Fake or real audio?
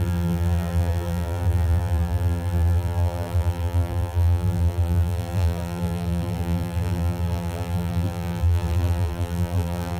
fake